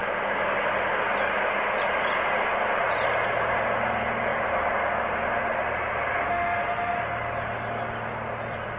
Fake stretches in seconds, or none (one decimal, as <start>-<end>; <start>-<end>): 6.3-7.0